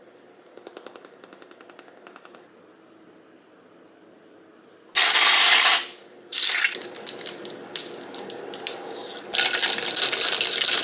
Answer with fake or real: real